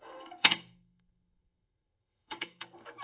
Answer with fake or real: fake